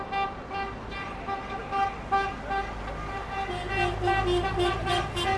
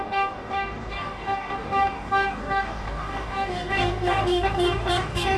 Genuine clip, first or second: first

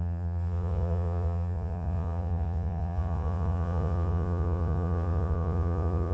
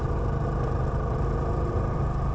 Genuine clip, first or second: second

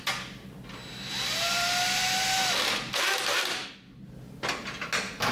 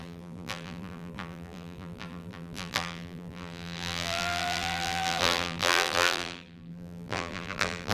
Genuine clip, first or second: first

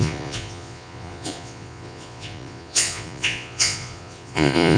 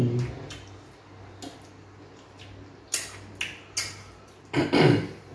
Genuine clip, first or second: second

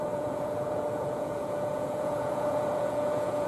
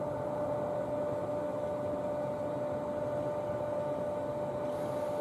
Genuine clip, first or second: second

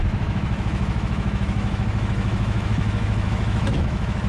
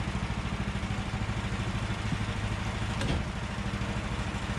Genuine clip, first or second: second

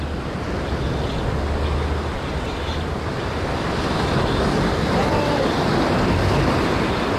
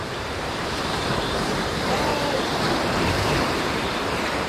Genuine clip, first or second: first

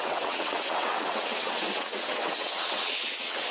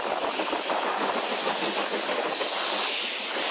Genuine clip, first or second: second